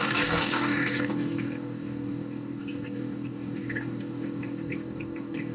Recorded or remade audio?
remade